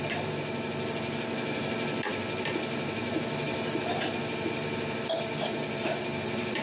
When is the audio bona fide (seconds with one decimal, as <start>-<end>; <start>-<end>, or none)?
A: 0.0-6.6